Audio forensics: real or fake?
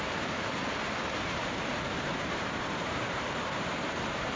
fake